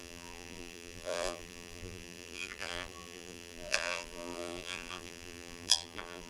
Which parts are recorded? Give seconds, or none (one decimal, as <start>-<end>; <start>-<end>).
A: none